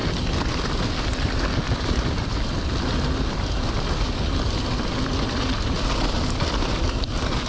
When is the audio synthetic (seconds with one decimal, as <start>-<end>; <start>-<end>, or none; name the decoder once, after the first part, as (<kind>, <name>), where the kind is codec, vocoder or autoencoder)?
none